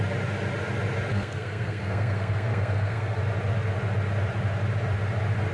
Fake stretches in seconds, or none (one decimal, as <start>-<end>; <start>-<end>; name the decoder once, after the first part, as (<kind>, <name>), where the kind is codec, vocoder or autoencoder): 1.1-3.2 (codec, SNAC)